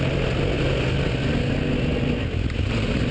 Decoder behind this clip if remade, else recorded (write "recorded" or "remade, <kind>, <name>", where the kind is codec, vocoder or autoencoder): recorded